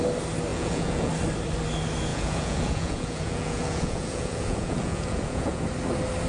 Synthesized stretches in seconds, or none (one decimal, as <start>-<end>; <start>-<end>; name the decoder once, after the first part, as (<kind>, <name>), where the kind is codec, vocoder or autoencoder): 0.5-1.1 (vocoder, Vocos); 2.1-5.6